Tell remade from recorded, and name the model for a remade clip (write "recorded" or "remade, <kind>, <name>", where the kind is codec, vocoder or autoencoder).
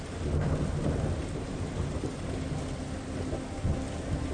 recorded